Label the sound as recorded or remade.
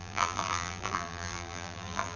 remade